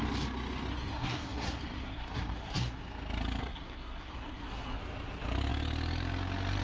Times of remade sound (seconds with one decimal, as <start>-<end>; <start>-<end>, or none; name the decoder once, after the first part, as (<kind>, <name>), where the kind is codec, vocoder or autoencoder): 0.7-2.8 (codec, SNAC); 3.4-4.8